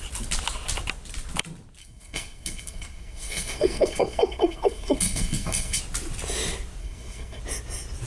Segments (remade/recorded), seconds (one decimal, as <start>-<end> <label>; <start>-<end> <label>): 0.0-1.8 recorded; 1.8-5.8 remade; 5.8-6.8 recorded; 6.8-7.4 remade; 7.4-8.1 recorded